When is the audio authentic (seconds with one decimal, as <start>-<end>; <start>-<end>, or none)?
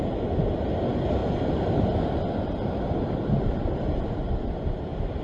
0.0-5.2